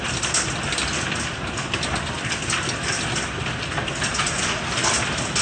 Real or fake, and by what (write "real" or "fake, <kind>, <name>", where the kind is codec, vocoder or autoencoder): real